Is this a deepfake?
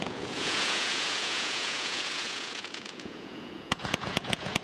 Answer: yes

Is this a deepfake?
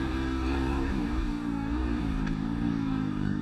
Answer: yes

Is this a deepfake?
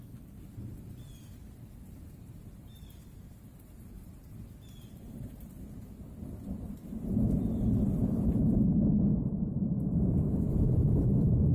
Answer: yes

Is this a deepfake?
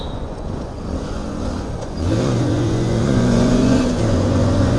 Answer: yes